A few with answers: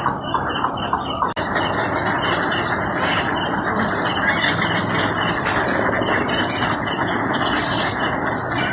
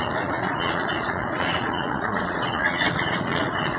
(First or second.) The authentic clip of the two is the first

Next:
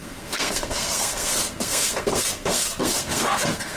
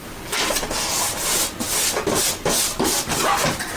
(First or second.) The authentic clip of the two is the second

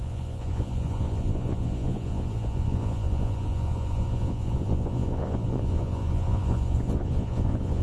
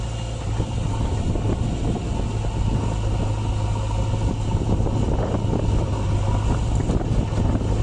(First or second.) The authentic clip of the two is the second